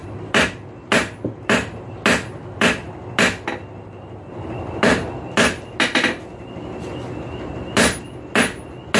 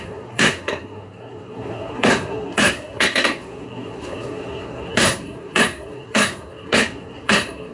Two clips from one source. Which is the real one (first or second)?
first